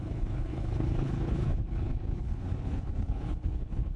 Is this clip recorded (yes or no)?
no